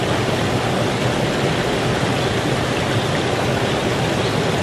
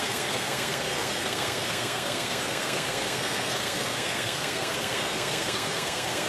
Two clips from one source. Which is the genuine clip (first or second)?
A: first